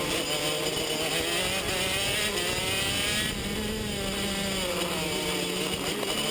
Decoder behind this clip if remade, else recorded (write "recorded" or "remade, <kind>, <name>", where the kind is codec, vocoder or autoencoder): recorded